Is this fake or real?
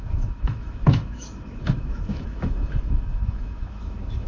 fake